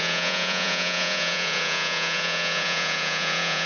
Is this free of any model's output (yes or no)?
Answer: no